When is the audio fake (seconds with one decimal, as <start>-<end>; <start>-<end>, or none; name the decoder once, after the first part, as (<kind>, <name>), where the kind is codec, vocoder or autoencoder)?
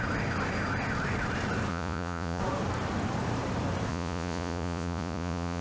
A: 1.7-2.4 (vocoder, Vocos); 3.9-5.6